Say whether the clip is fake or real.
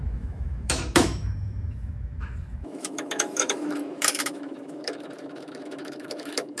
fake